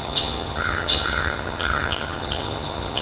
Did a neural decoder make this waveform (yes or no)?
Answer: yes